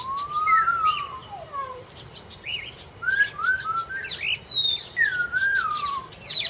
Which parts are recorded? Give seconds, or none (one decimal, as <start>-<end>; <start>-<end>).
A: 0.0-1.2; 2.7-5.4